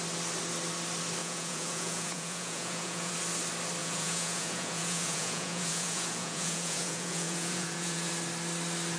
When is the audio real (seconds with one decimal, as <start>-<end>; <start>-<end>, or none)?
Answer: 0.0-1.2; 3.1-3.8; 8.1-9.0